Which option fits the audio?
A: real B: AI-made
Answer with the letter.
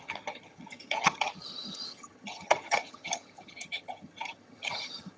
B